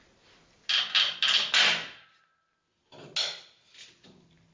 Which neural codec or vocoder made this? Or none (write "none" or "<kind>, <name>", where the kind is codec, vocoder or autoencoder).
none